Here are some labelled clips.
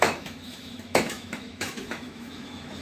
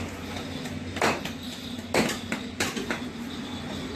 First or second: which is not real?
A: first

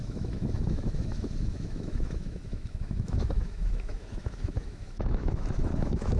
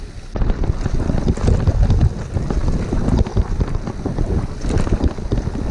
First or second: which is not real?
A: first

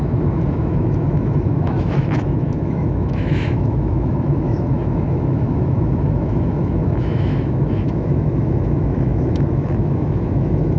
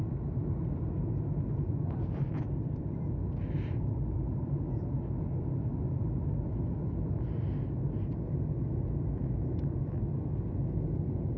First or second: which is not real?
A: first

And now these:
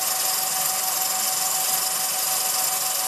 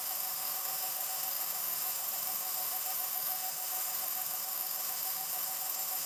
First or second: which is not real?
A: second